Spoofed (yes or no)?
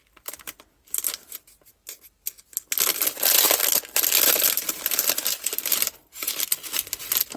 no